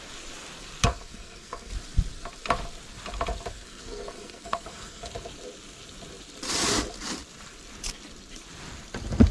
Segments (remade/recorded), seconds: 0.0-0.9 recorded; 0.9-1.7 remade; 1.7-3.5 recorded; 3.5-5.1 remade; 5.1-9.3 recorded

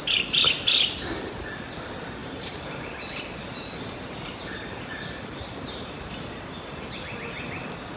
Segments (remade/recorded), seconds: 0.0-2.2 recorded; 2.2-2.8 remade; 2.8-8.0 recorded

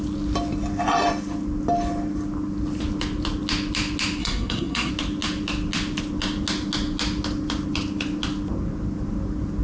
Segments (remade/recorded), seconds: 0.0-4.2 recorded; 4.2-4.9 remade; 4.9-9.6 recorded

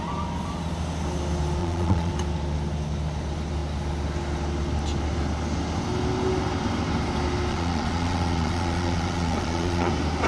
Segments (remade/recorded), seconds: 0.0-1.6 recorded; 1.6-2.1 remade; 2.1-7.5 recorded; 7.5-9.9 remade; 9.9-10.3 recorded

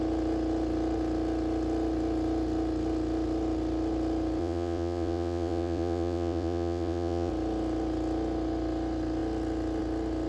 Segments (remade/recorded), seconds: 0.0-4.4 recorded; 4.4-7.3 remade; 7.3-10.3 recorded

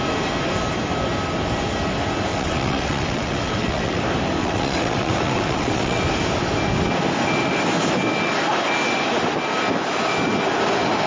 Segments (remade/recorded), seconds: 0.0-2.3 recorded; 2.3-4.0 remade; 4.0-4.4 recorded; 4.4-6.0 remade; 6.0-11.1 recorded

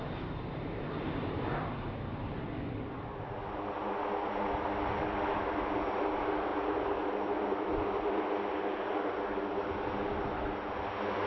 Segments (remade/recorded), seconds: 0.0-11.3 recorded

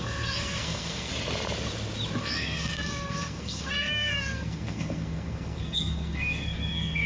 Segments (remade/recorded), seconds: 0.0-1.1 remade; 1.1-2.2 recorded; 2.2-7.1 remade